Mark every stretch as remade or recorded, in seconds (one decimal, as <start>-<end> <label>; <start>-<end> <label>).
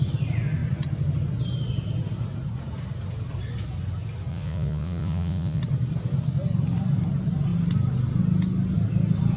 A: 0.0-4.3 recorded; 4.3-5.6 remade; 5.6-9.4 recorded